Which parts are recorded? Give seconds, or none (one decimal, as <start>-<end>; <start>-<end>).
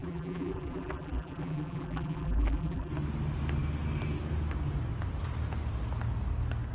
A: 2.9-6.7